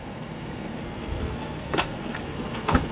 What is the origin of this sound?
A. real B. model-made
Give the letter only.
B